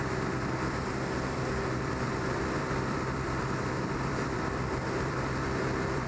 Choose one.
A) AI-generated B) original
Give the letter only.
A